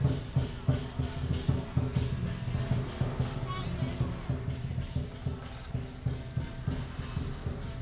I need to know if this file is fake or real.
real